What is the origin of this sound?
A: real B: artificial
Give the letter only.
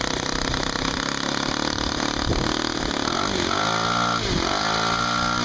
A